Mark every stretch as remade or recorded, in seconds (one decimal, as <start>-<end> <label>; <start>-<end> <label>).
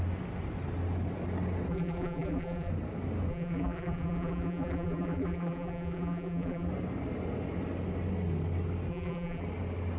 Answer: 0.0-1.7 recorded; 1.7-2.7 remade; 2.7-3.3 recorded; 3.3-6.7 remade; 6.7-8.9 recorded; 8.9-9.4 remade; 9.4-10.0 recorded